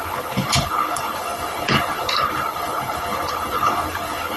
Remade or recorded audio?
remade